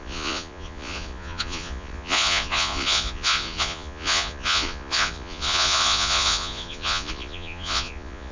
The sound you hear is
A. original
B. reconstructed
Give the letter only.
B